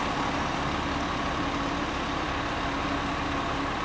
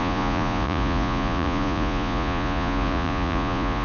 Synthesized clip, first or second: second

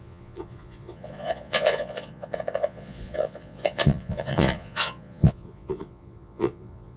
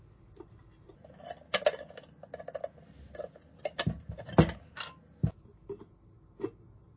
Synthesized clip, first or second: first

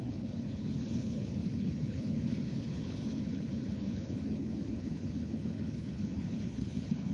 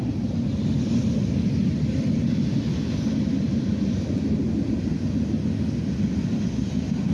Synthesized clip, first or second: first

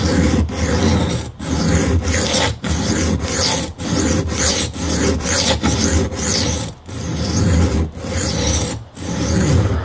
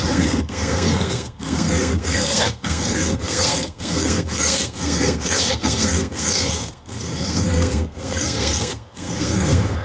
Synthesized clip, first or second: second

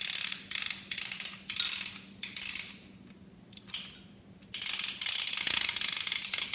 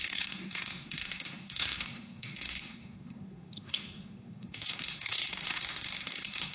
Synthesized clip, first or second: second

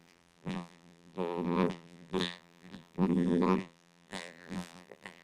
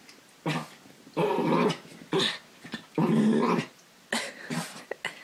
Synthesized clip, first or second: first